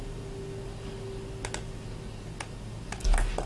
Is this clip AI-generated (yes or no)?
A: no